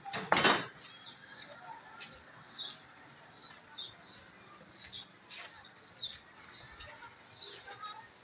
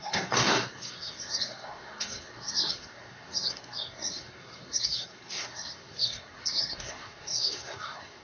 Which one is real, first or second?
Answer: first